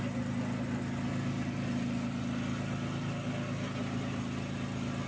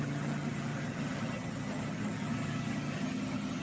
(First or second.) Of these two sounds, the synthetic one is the second